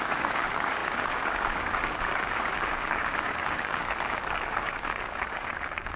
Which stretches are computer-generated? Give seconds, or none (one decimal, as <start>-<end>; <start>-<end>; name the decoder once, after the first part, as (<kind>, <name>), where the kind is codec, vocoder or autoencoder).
0.0-6.0 (codec, DAC)